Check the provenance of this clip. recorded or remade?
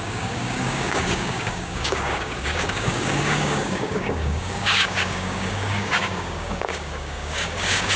remade